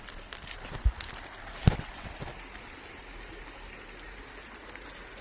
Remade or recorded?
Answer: recorded